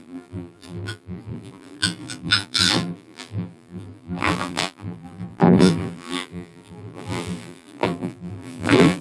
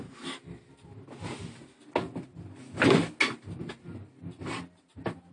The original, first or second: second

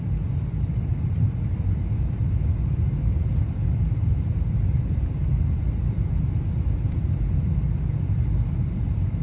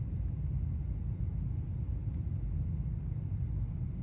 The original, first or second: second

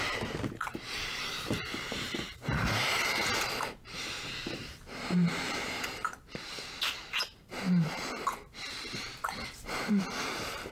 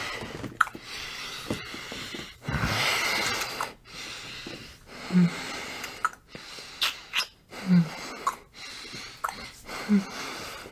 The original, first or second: second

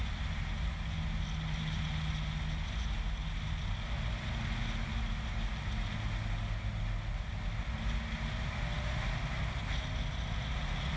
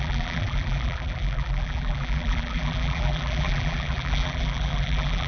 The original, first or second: first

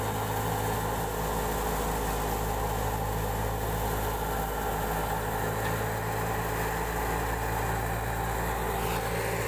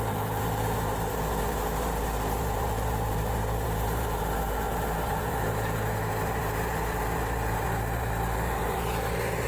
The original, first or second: first